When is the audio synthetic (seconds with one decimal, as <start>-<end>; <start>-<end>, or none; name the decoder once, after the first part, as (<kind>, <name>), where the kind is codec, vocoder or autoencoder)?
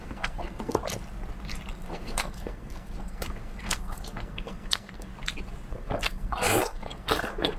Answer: 0.0-0.8 (codec, SNAC); 1.7-5.1; 5.7-7.6